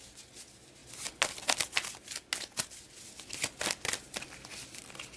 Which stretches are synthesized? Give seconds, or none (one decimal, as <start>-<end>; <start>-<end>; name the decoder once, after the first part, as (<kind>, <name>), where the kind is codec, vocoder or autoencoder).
none